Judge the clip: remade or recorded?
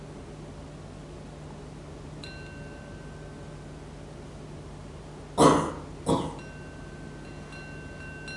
recorded